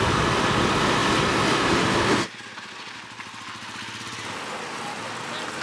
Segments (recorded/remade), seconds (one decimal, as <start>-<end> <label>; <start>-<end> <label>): 0.0-5.6 recorded